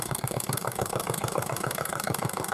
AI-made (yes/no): yes